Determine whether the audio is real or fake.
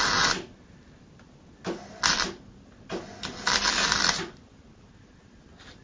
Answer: real